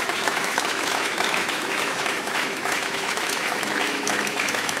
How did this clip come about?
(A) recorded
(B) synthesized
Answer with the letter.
B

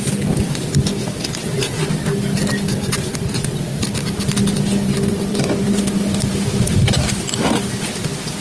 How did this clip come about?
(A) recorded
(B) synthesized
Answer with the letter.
A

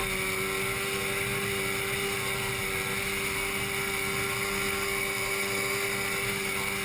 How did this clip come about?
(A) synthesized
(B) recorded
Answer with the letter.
B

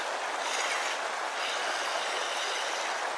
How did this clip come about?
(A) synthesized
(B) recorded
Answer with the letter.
B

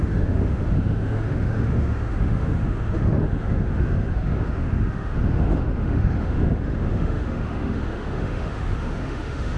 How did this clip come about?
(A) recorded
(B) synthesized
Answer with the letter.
B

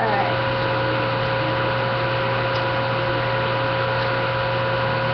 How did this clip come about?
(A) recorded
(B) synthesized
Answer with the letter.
A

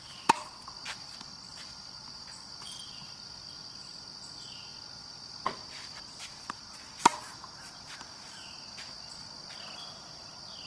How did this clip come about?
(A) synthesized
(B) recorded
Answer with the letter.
B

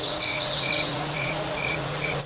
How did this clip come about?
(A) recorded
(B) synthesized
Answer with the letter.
B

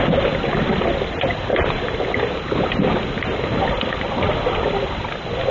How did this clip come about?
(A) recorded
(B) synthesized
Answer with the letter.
A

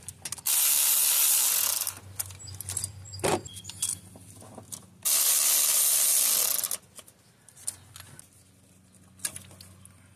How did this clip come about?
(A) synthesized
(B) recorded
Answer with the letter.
B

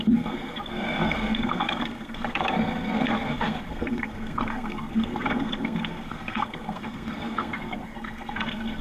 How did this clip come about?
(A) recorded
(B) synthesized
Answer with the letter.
B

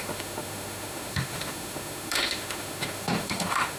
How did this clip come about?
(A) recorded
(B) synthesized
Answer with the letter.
B